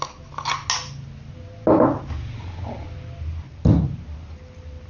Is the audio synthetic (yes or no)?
no